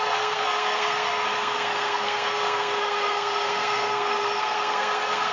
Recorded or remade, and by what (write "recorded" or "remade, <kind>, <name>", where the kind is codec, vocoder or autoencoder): remade, codec, SNAC